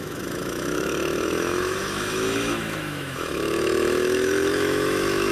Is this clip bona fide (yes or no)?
no